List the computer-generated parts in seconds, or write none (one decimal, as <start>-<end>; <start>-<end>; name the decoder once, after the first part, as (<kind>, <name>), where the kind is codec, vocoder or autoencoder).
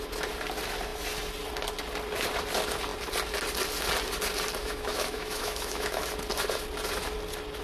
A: 4.6-6.0 (autoencoder, DAC-VAE)